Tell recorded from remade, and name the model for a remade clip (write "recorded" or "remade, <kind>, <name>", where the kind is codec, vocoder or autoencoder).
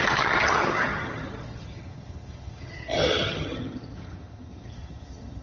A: remade, vocoder, HiFi-GAN